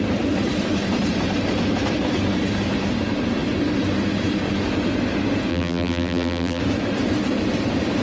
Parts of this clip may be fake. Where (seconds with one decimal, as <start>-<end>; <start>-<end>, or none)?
5.5-6.6